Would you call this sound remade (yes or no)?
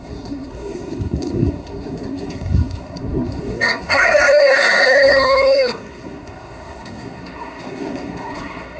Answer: yes